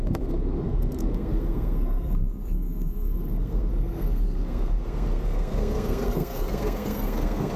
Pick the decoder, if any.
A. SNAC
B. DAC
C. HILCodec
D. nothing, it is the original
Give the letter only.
A